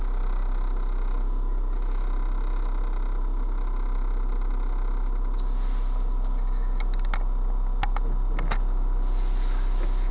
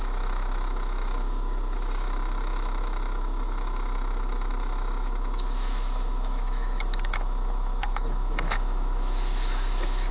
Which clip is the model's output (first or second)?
second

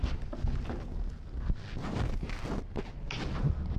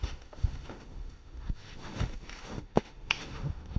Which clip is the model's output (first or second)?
second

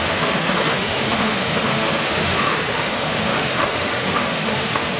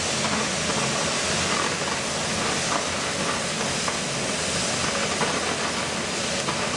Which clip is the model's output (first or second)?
first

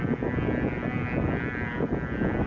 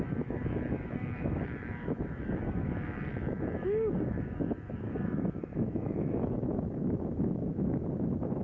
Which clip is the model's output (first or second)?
second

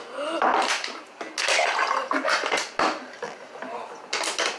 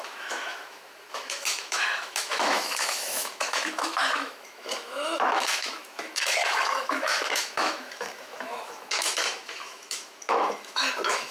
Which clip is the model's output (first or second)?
second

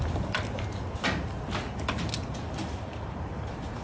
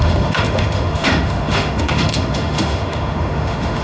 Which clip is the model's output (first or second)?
second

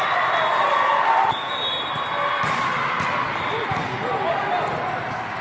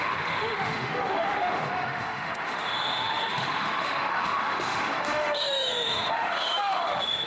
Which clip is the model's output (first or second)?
second